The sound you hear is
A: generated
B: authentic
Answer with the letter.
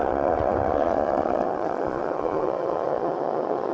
A